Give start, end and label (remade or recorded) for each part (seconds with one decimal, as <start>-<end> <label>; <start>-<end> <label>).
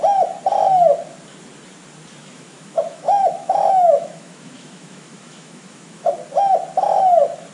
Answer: 0.0-2.2 recorded; 2.2-6.1 remade; 6.1-7.5 recorded